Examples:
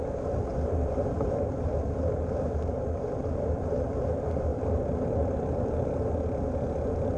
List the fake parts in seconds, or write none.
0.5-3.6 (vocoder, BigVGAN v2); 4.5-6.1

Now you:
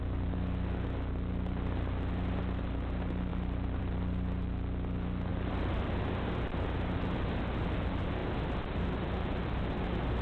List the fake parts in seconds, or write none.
5.3-6.0 (vocoder, BigVGAN v2)

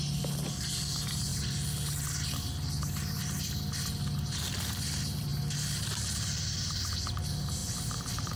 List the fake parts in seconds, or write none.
none

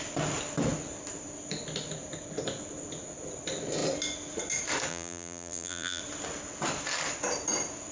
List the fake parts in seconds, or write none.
4.9-6.0 (vocoder, BigVGAN v2)

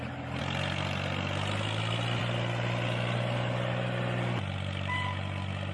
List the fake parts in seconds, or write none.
none

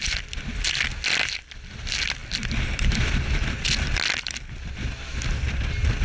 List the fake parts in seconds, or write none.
none

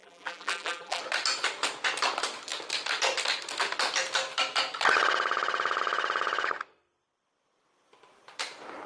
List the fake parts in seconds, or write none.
0.0-1.0 (vocoder, BigVGAN v2)